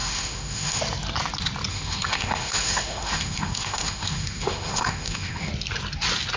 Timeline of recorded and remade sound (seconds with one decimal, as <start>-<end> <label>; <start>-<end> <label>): 0.0-0.8 remade; 0.8-1.7 recorded; 1.7-5.5 remade; 5.5-6.4 recorded